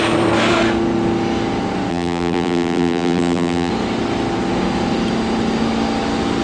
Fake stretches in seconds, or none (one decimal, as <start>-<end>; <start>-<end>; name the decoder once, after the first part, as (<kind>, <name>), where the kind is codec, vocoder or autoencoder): 1.9-3.7 (vocoder, BigVGAN v2)